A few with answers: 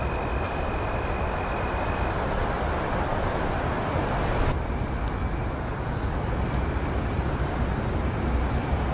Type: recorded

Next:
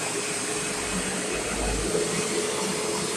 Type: recorded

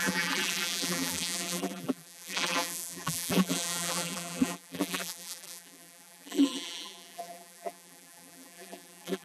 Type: remade